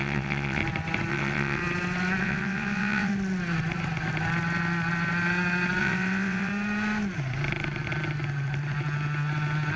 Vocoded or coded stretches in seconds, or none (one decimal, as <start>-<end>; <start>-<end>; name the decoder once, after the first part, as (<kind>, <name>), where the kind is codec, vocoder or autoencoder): 0.0-0.6 (vocoder, WaveNeXt); 1.1-1.6; 2.2-3.1; 5.8-6.5